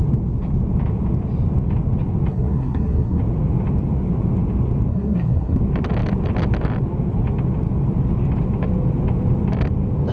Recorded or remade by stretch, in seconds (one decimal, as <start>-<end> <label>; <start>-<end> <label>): 0.0-2.3 recorded; 2.3-3.2 remade; 3.2-4.9 recorded; 4.9-5.6 remade; 5.6-10.1 recorded